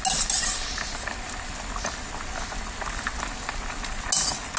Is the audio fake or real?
real